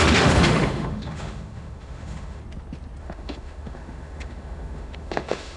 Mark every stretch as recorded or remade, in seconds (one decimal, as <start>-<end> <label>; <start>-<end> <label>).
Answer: 0.0-2.4 remade; 2.4-3.0 recorded; 3.0-5.6 remade